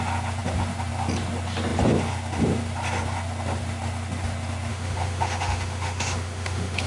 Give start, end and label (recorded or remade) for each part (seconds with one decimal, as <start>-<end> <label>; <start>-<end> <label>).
0.0-4.7 recorded; 4.7-6.9 remade